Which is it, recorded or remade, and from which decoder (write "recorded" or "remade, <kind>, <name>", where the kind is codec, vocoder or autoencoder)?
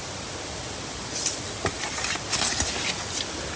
recorded